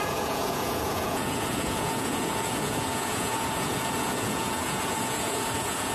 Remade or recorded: remade